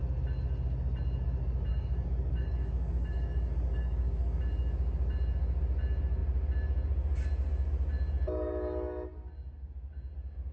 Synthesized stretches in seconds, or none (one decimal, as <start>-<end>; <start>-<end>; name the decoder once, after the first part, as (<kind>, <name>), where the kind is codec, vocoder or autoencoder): 1.7-4.4 (codec, DAC)